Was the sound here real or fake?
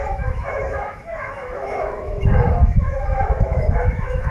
fake